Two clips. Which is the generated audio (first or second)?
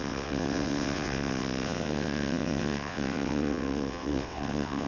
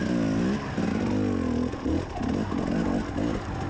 first